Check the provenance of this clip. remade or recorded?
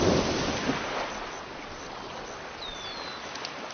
recorded